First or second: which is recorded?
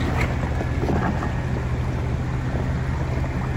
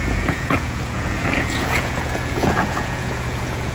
first